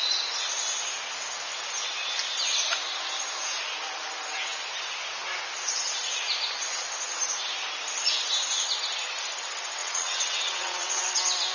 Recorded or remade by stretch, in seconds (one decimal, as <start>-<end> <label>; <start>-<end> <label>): 0.0-9.8 recorded; 9.8-11.0 remade; 11.0-11.5 recorded